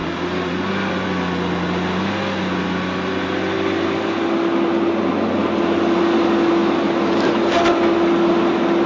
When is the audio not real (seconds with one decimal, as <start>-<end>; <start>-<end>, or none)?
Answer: none